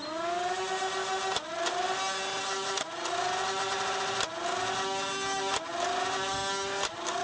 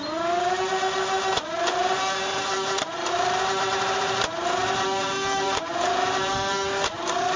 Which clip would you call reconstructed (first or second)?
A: second